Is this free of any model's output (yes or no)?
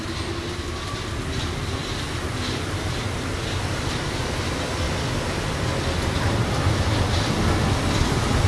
yes